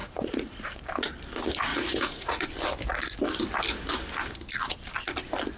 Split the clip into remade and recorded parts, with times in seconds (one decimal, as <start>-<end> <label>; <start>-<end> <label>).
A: 0.0-0.7 remade; 0.7-1.7 recorded; 1.7-2.5 remade; 2.5-5.6 recorded